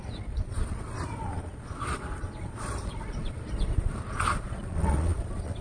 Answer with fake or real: fake